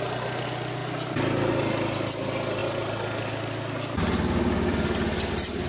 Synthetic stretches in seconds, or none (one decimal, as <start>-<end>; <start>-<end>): none